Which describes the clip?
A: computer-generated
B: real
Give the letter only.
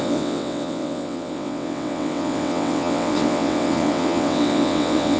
A